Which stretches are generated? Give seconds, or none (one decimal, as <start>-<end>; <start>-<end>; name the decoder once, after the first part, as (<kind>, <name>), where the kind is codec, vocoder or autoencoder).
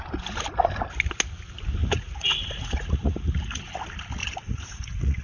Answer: 1.8-3.7 (vocoder, Vocos); 4.2-5.2